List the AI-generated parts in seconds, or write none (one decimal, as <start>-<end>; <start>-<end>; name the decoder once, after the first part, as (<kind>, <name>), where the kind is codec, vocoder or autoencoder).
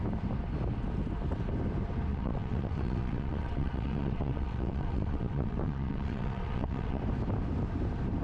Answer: 2.1-7.0 (vocoder, WaveNeXt)